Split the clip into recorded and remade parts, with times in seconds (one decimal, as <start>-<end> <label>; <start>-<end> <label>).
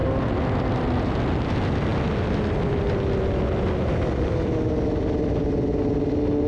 0.0-6.5 recorded